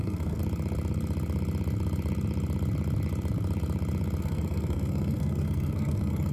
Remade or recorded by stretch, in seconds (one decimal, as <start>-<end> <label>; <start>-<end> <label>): 0.0-0.4 remade; 0.4-4.2 recorded; 4.2-6.3 remade